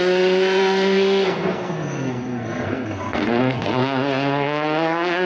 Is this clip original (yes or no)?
no